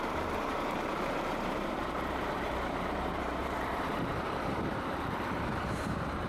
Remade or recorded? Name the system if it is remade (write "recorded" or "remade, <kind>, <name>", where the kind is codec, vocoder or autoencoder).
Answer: remade, vocoder, BigVGAN v2